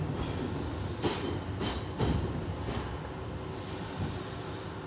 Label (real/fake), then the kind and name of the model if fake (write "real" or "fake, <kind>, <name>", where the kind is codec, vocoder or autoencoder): real